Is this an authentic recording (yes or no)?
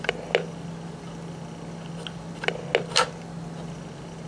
yes